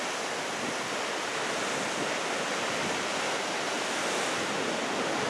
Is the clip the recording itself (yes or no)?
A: yes